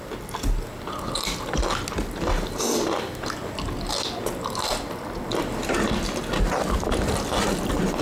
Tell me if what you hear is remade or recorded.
recorded